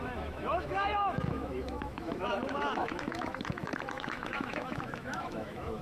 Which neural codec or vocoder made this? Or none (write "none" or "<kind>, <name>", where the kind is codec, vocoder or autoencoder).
autoencoder, DAC-VAE